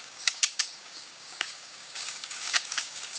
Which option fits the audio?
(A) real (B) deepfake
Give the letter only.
B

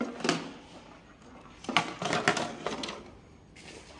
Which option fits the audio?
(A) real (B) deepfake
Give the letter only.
A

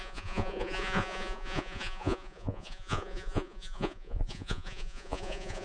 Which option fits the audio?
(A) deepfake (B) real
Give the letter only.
A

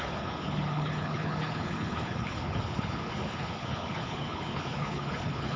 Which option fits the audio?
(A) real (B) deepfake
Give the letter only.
B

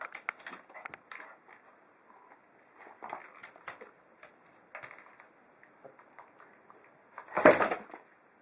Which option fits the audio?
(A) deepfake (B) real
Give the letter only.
B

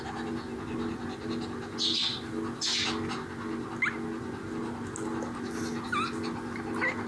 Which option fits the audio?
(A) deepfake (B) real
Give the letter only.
B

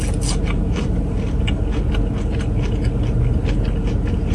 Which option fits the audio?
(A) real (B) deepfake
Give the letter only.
A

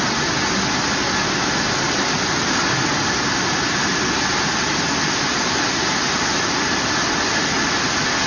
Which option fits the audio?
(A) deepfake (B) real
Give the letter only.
B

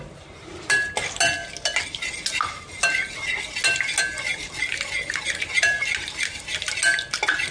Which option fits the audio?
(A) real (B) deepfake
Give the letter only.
A